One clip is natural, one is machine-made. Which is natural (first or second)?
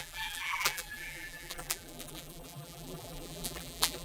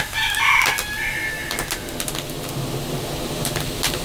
second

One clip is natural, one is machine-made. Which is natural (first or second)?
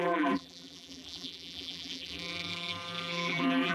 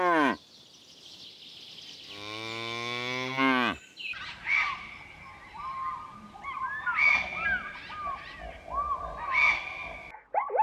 second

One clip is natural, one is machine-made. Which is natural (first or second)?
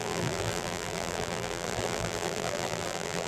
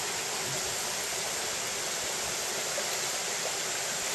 second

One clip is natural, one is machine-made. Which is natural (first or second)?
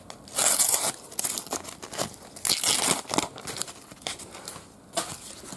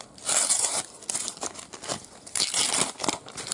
first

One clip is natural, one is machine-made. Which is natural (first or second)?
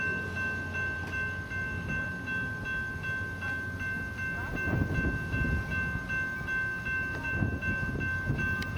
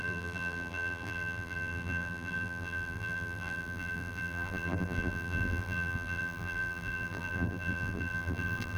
first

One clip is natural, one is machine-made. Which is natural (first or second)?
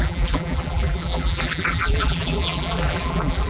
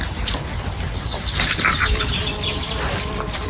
second